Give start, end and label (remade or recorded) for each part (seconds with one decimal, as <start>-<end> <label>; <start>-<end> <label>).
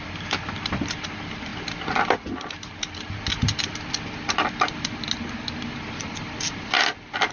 0.0-7.3 recorded